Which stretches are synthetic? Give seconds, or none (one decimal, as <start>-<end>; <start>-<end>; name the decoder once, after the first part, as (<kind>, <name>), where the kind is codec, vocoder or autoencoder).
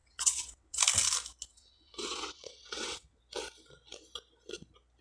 0.0-0.8 (vocoder, WaveNeXt); 1.5-3.2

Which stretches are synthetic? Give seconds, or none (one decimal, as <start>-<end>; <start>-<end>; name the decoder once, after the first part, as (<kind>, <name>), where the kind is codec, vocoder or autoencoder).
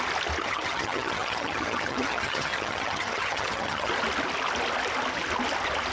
0.4-3.9 (vocoder, HiFi-GAN)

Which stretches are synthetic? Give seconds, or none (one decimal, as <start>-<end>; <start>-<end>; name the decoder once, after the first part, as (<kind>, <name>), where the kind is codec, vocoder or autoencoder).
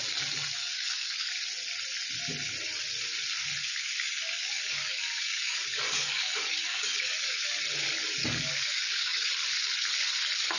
0.6-1.3 (codec, DAC); 3.6-7.6; 8.2-9.3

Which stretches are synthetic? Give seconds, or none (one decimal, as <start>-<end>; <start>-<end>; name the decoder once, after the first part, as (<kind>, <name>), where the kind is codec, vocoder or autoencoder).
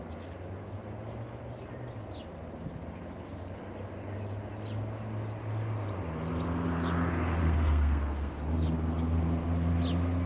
7.4-8.3 (codec, SNAC)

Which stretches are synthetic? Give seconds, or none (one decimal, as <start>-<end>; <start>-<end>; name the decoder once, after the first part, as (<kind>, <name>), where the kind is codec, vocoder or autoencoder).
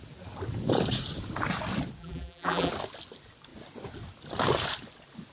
2.0-2.7 (vocoder, BigVGAN v2)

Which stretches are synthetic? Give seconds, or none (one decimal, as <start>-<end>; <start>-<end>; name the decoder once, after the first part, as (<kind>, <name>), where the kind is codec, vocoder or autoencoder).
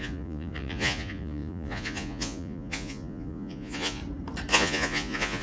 0.0-4.0 (vocoder, Vocos); 4.5-5.4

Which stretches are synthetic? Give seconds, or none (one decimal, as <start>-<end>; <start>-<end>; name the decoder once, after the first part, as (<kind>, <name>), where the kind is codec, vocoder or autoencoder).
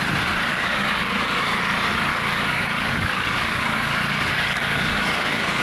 0.5-1.6 (codec, DAC); 2.1-5.6